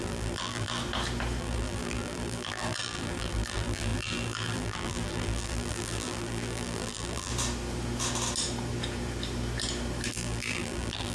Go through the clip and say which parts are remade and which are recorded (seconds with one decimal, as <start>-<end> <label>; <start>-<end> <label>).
0.0-0.8 remade; 0.8-1.4 recorded; 1.4-7.3 remade; 7.3-10.1 recorded; 10.1-11.1 remade